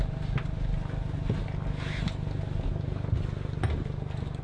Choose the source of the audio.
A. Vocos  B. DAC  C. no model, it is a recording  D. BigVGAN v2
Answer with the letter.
C